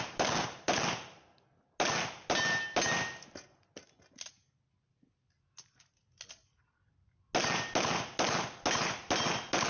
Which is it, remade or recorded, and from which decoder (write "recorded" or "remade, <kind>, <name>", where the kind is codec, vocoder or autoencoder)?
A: recorded